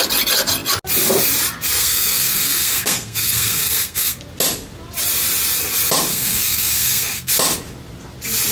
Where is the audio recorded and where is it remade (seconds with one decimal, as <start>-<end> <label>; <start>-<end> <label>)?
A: 0.0-1.8 recorded; 1.8-4.2 remade; 4.2-6.1 recorded; 6.1-7.3 remade; 7.3-8.5 recorded